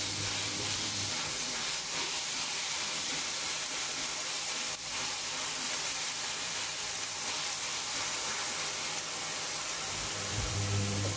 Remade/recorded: remade